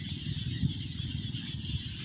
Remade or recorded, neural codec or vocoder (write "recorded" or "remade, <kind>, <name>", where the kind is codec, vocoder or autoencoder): recorded